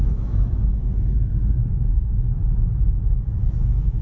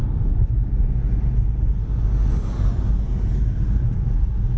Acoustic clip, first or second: second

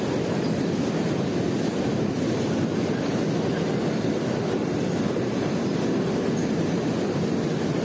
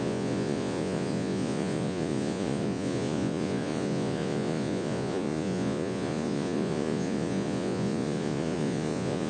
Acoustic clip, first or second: first